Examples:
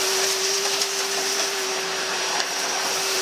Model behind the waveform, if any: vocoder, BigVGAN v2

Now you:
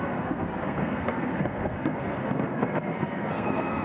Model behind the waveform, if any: codec, SNAC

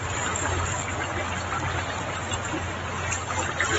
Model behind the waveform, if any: none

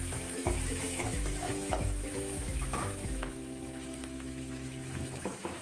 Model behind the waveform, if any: autoencoder, DAC-VAE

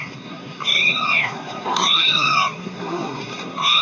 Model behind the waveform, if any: codec, SNAC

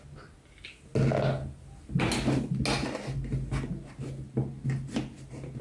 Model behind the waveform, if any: none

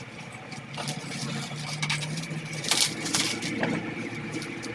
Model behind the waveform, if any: vocoder, BigVGAN v2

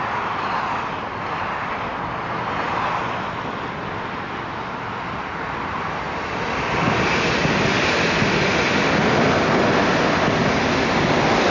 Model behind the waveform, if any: none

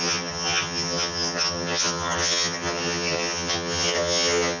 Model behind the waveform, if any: vocoder, HiFi-GAN